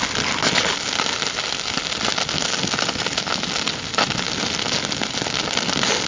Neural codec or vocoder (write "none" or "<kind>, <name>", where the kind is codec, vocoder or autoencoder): none